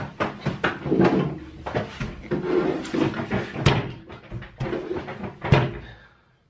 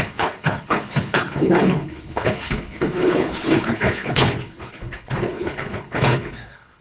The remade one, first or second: second